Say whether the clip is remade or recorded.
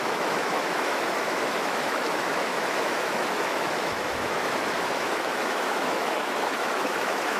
remade